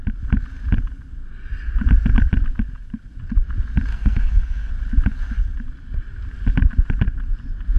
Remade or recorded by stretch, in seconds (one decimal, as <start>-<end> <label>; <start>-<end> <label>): 0.0-3.9 recorded; 3.9-4.7 remade; 4.7-7.8 recorded

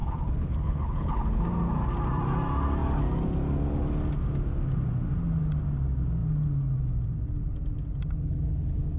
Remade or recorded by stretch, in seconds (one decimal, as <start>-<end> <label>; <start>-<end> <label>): 0.0-1.4 remade; 1.4-9.0 recorded